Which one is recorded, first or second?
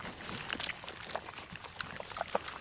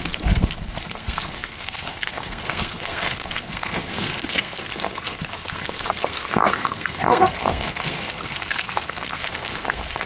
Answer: first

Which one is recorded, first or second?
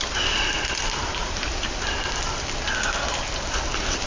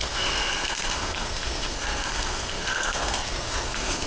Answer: first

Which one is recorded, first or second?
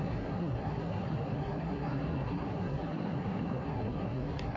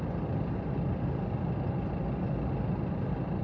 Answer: second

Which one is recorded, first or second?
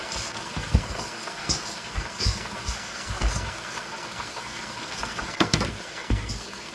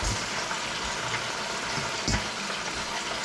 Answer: second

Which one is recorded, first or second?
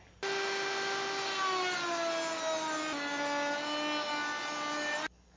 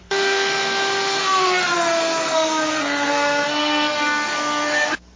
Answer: first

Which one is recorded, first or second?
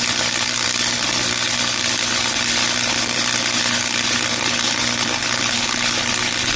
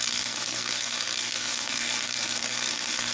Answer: first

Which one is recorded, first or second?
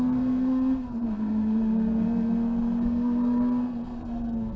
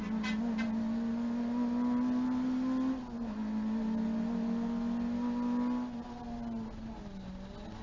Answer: second